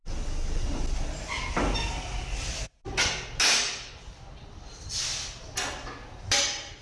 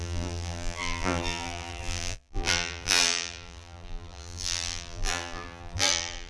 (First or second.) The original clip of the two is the first